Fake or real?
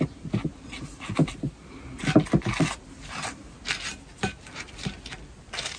real